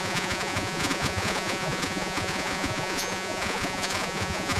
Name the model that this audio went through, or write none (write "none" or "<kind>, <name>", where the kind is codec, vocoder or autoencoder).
vocoder, Vocos